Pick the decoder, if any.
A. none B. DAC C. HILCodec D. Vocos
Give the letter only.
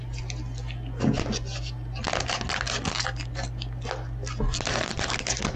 A